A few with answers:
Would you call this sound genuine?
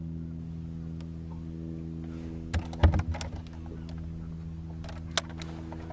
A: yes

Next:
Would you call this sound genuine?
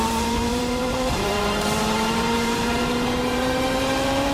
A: no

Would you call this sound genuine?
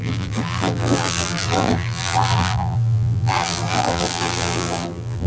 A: no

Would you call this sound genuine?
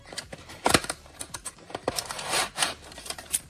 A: no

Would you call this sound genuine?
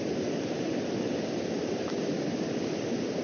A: no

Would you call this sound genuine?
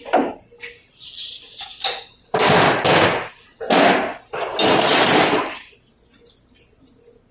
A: yes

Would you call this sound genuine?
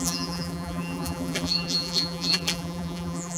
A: no